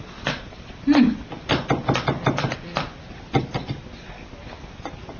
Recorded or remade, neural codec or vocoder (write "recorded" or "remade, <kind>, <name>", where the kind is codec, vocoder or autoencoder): recorded